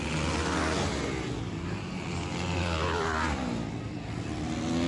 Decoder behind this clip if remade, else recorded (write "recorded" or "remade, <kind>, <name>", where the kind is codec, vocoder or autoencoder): recorded